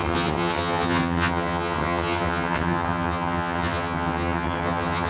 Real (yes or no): no